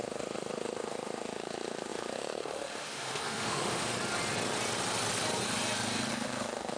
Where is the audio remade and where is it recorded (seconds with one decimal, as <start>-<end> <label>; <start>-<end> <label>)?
0.0-3.9 remade; 3.9-6.1 recorded; 6.1-6.8 remade